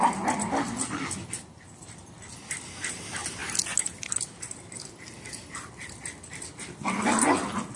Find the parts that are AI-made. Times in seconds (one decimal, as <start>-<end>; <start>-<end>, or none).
none